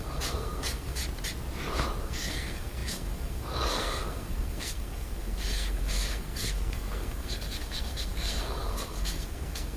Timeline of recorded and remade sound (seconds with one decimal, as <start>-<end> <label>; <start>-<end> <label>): 0.0-1.0 remade; 1.0-2.0 recorded; 2.0-9.8 remade